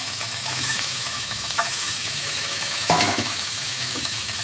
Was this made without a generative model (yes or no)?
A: no